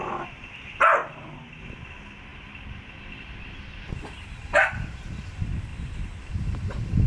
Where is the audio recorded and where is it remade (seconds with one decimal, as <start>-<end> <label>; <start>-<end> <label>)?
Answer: 0.0-7.1 recorded